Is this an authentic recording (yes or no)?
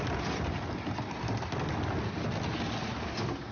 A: yes